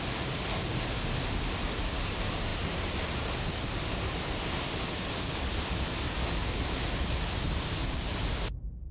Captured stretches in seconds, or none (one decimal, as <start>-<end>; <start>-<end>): 0.0-8.9